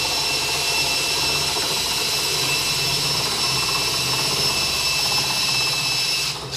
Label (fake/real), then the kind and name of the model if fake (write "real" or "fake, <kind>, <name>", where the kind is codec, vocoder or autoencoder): real